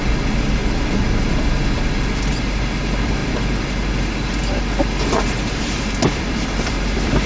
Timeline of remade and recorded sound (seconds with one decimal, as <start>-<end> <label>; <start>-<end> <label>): 0.0-0.6 remade; 0.6-1.5 recorded; 1.5-3.2 remade; 3.2-6.1 recorded; 6.1-7.3 remade